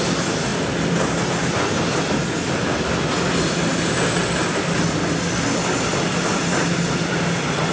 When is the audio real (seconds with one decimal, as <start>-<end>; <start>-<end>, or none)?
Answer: 0.0-7.7